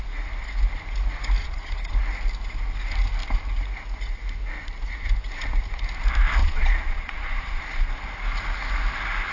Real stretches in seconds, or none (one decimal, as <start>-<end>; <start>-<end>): 0.0-1.4; 1.9-6.4; 7.9-9.3